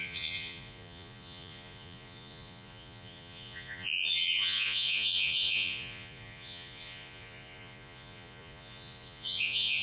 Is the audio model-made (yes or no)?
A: yes